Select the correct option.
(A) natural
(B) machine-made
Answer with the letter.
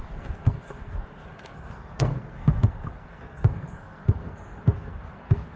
B